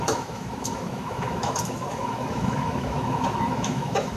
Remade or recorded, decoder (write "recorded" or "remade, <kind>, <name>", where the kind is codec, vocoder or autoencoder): remade, autoencoder, DAC-VAE